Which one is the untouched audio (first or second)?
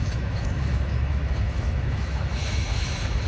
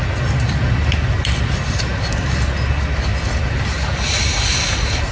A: second